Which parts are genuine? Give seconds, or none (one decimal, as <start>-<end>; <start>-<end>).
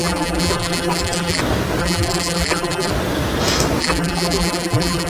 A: 1.4-1.8; 2.9-3.8